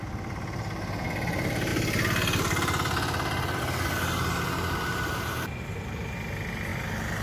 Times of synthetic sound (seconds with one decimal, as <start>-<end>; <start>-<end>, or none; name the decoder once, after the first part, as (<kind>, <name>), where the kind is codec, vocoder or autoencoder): 4.9-6.2 (vocoder, BigVGAN v2)

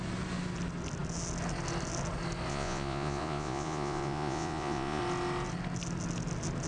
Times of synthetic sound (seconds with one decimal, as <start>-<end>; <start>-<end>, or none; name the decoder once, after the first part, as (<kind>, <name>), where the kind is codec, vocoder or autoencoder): 2.5-5.0 (vocoder, Vocos)